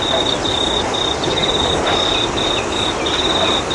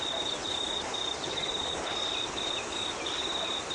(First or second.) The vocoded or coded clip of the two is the second